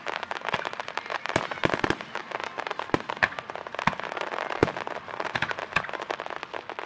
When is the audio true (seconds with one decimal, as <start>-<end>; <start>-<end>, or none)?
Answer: 0.0-2.2; 3.7-6.9